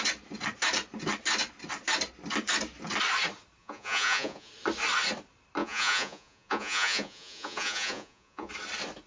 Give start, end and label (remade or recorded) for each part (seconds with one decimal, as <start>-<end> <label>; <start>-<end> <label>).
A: 0.0-3.6 recorded; 3.6-4.5 remade; 4.5-5.6 recorded; 5.6-8.5 remade; 8.5-9.1 recorded